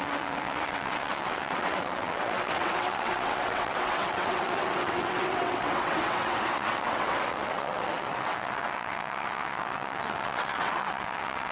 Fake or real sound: fake